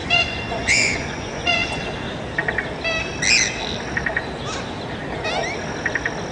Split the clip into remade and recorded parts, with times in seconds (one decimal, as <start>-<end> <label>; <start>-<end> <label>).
0.0-1.9 remade; 1.9-6.3 recorded